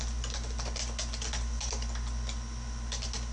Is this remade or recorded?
recorded